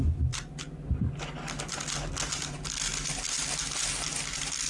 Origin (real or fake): real